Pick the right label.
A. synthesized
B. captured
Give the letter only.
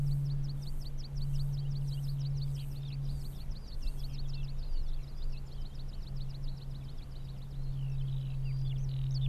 B